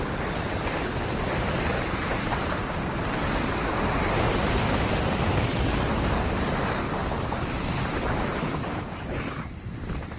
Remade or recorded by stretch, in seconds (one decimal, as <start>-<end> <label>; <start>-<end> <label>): 0.0-1.3 recorded; 1.3-5.6 remade; 5.6-7.0 recorded; 7.0-7.8 remade; 7.8-10.2 recorded